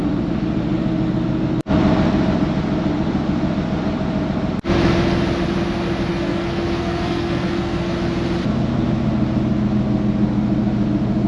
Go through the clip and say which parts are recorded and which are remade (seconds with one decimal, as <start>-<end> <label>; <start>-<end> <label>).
0.0-6.1 recorded; 6.1-7.9 remade; 7.9-11.3 recorded